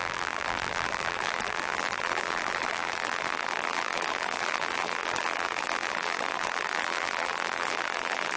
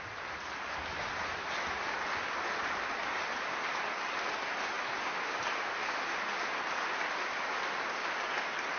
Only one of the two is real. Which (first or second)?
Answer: second